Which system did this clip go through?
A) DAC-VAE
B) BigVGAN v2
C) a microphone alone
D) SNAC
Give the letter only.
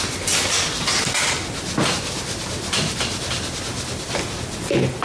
C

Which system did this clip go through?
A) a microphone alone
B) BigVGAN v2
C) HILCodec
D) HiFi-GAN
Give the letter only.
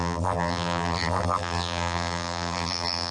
B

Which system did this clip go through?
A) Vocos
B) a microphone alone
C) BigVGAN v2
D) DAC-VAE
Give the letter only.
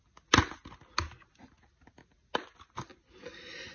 B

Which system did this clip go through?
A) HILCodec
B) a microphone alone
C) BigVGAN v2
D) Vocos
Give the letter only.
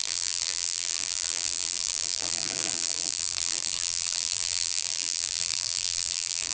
C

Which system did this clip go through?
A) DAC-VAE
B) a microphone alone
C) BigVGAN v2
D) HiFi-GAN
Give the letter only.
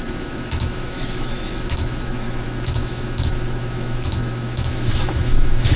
A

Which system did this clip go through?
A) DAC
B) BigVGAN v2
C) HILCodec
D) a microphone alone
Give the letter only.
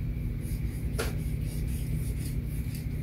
B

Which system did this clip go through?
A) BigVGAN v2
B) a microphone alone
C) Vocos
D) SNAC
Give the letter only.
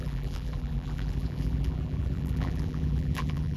A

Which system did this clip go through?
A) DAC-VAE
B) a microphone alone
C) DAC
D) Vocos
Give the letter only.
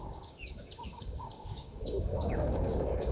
C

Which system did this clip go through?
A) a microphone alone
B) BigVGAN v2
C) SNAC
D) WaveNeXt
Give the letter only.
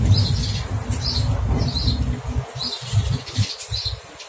A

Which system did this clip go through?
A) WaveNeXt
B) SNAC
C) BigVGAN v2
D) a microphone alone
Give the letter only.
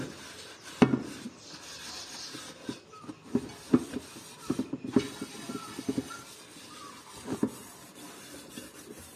D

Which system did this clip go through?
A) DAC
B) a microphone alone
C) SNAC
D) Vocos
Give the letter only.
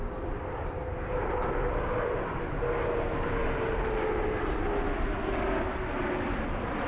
B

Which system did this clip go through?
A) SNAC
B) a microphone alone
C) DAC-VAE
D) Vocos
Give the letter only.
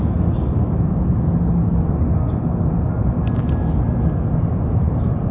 B